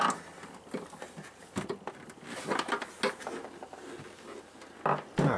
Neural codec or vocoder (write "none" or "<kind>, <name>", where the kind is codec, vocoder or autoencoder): none